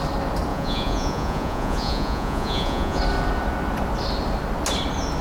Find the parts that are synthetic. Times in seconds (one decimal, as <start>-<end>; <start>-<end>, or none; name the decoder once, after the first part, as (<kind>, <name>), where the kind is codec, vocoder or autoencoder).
0.5-3.0 (vocoder, Vocos)

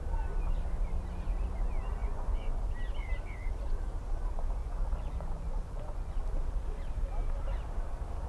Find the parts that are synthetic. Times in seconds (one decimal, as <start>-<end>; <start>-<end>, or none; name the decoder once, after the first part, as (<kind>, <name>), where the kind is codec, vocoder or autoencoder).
2.0-2.6 (vocoder, Vocos); 4.6-6.2

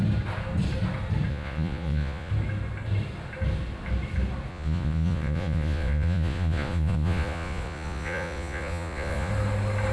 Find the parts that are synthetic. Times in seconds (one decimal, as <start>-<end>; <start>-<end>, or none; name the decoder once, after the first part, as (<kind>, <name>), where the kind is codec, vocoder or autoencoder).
1.3-2.3 (vocoder, Vocos); 4.5-9.3

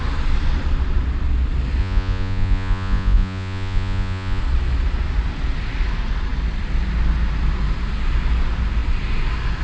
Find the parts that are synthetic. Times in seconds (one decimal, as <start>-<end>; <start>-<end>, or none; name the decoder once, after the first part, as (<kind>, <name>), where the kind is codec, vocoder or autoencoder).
1.8-4.4 (vocoder, Vocos)

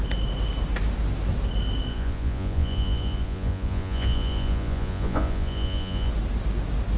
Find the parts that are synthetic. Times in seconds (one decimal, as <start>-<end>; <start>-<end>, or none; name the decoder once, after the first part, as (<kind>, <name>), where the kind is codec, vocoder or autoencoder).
1.9-6.1 (vocoder, Vocos)

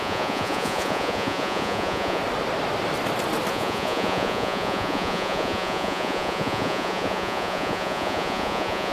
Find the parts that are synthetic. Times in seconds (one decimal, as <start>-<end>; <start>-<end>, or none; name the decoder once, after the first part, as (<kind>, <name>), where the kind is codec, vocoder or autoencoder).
0.0-2.2 (vocoder, Vocos); 3.5-8.9